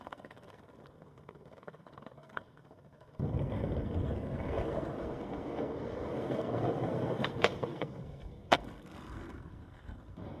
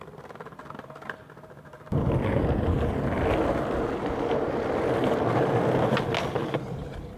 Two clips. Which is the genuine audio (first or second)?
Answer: second